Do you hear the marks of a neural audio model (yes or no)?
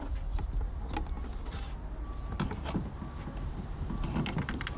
no